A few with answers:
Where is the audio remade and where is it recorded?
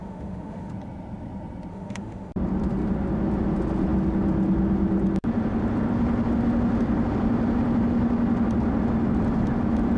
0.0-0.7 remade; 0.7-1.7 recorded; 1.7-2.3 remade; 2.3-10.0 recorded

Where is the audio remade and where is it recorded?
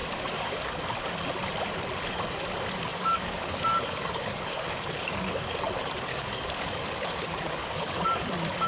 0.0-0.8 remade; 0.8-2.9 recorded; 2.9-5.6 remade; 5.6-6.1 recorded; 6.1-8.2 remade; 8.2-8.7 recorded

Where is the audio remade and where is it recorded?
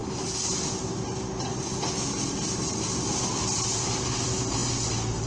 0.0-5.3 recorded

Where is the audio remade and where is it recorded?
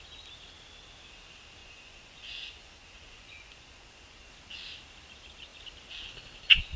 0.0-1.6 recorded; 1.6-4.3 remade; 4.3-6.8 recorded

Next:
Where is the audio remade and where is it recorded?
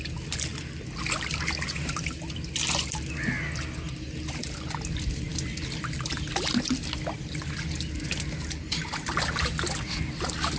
0.0-10.6 recorded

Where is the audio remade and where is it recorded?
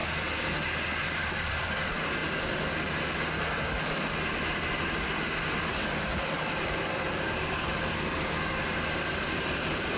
0.0-1.2 recorded; 1.2-2.2 remade; 2.2-5.4 recorded; 5.4-10.0 remade